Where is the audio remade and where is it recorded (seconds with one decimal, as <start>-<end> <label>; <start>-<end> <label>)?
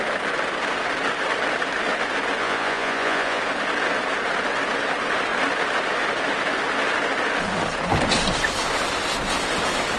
0.0-2.4 recorded; 2.4-3.4 remade; 3.4-10.0 recorded